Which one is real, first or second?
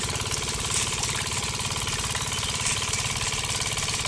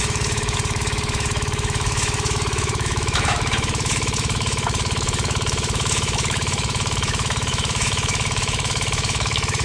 first